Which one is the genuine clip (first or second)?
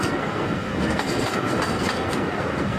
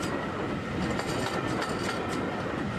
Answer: second